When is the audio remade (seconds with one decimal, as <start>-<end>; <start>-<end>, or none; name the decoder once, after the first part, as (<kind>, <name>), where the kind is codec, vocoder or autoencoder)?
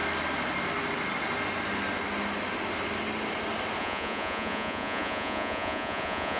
3.8-6.4 (vocoder, Vocos)